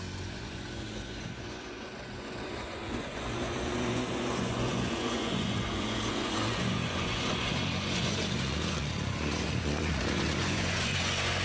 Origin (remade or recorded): remade